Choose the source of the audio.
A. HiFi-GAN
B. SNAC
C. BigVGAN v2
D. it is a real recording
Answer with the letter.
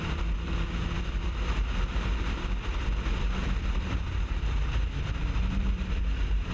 C